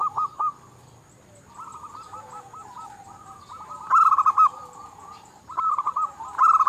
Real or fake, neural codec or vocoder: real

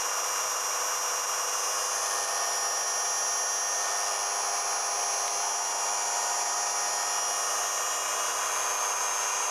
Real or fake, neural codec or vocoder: real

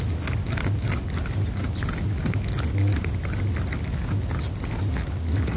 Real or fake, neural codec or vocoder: real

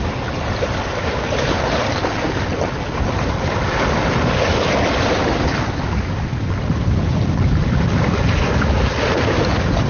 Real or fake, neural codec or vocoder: real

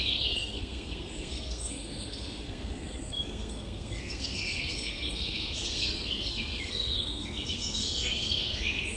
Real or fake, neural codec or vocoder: fake, codec, SNAC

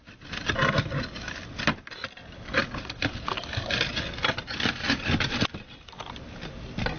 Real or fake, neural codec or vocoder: real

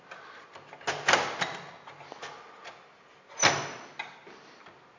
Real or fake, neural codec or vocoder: real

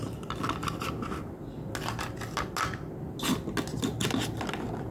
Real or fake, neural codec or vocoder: real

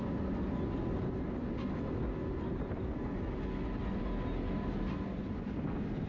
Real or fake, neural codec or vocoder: real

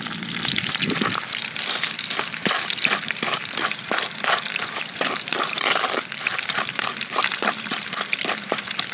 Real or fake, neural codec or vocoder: fake, vocoder, BigVGAN v2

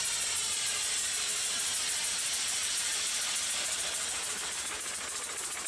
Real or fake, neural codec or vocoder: real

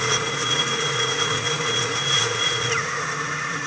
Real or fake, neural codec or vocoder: fake, vocoder, Vocos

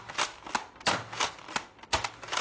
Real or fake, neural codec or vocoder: real